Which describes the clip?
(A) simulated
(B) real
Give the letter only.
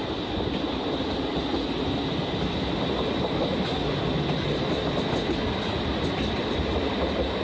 B